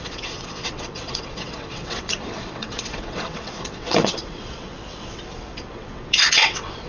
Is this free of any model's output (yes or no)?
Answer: no